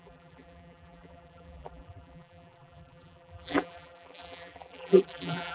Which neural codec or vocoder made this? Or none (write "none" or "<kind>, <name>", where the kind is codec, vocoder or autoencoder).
vocoder, BigVGAN v2